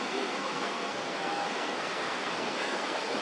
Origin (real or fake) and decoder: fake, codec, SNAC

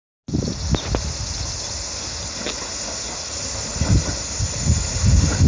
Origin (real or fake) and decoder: real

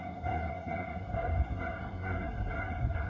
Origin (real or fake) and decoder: fake, codec, SNAC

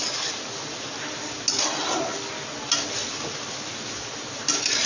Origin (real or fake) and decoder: real